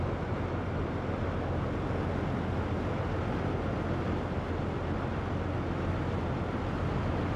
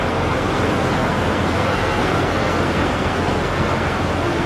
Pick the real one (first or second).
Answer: first